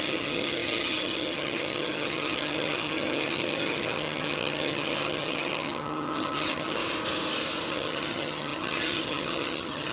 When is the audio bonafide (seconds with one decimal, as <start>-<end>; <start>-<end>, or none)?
6.8-7.7